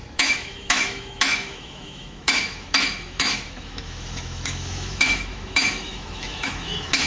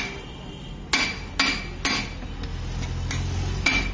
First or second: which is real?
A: second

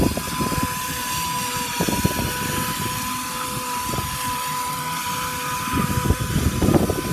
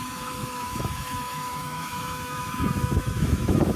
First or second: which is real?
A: first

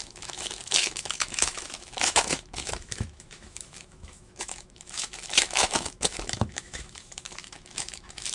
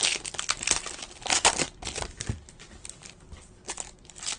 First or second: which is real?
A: second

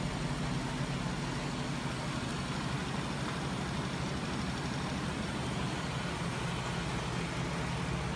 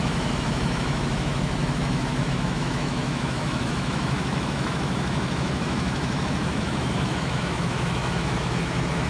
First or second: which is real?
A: first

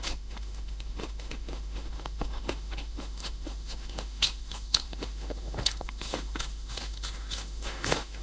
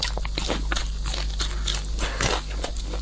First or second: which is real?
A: second